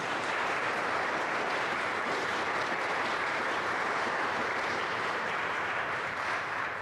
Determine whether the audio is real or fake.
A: fake